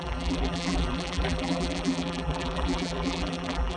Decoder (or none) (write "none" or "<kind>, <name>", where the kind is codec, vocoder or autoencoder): vocoder, BigVGAN v2